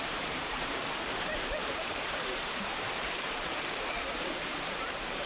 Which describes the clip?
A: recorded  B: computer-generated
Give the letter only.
B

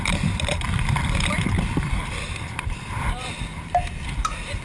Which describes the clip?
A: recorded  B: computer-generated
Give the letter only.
B